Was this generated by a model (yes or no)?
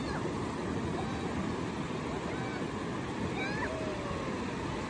no